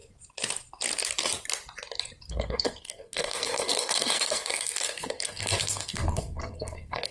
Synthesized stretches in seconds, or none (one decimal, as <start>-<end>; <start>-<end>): 2.3-7.1